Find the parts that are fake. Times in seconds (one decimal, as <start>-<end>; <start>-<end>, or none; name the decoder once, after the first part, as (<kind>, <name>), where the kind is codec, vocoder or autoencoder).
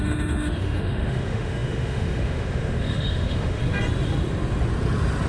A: 0.0-3.6 (autoencoder, DAC-VAE)